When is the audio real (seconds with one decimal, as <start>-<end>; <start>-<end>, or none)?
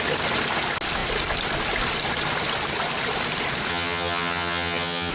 0.0-3.7